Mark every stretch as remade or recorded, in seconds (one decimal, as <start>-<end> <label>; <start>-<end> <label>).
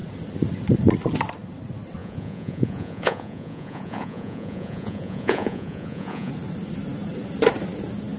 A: 0.0-2.0 recorded; 2.0-6.3 remade; 6.3-8.2 recorded